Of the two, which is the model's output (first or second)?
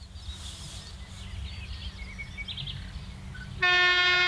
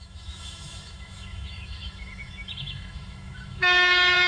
second